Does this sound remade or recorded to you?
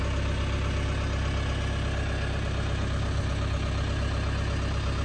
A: recorded